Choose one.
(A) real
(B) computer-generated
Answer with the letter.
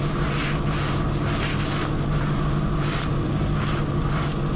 A